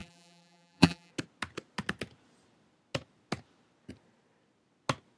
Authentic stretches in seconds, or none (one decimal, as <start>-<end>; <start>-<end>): 1.1-5.2